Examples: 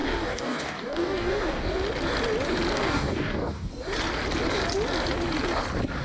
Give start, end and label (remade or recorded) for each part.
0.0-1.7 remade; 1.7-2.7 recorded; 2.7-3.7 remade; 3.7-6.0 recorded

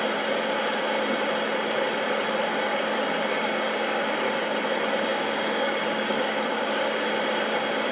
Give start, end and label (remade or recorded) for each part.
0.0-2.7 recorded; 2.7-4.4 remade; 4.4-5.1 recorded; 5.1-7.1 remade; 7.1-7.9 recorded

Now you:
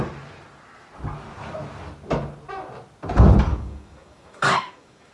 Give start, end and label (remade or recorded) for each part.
0.0-3.5 recorded; 3.5-5.1 remade

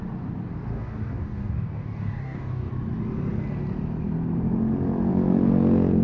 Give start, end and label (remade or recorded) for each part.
0.0-0.7 recorded; 0.7-2.7 remade; 2.7-6.0 recorded

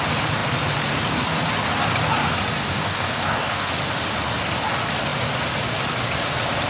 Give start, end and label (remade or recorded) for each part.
0.0-2.7 recorded; 2.7-3.7 remade; 3.7-6.7 recorded

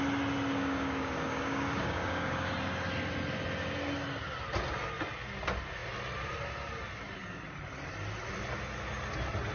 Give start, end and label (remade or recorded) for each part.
0.0-0.5 recorded; 0.5-2.5 remade; 2.5-9.5 recorded